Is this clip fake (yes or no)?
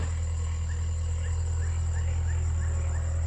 no